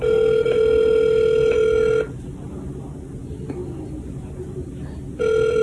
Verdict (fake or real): real